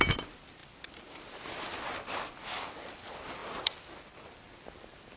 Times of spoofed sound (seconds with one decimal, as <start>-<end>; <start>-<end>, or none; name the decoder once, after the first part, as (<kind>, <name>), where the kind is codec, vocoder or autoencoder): none